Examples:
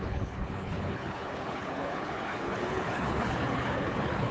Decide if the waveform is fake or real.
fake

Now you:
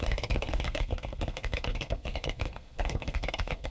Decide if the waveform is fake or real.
fake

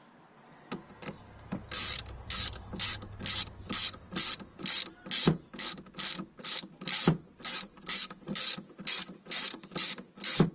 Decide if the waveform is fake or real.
real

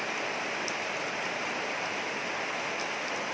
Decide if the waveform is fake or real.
real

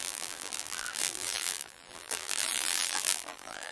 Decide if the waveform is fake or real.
fake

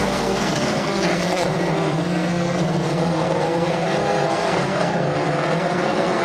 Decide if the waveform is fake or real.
fake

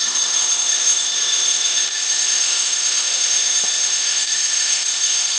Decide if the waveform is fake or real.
fake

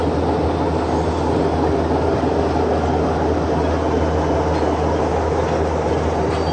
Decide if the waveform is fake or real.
real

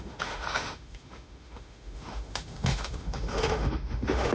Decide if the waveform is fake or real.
fake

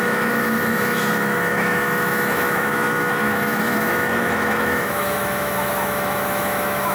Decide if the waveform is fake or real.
fake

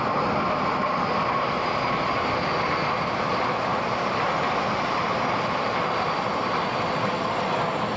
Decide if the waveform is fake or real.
real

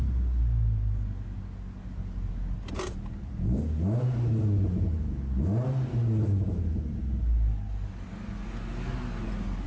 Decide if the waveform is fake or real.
real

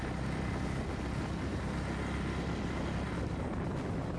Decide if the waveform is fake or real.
real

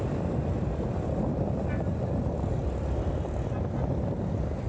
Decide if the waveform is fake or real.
real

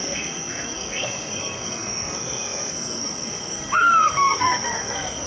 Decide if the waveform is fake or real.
fake